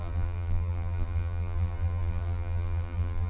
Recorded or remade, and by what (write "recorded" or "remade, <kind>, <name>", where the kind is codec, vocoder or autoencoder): remade, vocoder, BigVGAN v2